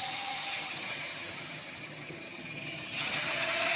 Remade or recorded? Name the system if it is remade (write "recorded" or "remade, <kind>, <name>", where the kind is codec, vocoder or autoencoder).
remade, vocoder, HiFi-GAN